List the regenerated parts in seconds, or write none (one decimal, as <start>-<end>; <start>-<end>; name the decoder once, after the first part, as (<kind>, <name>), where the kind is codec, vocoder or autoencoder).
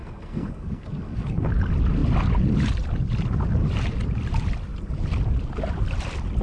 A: 0.0-1.5 (codec, SNAC)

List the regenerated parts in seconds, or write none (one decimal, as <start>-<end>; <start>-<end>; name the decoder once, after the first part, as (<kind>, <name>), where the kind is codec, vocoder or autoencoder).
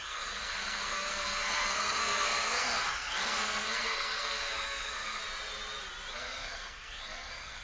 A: 0.0-5.2 (codec, SNAC); 6.1-7.6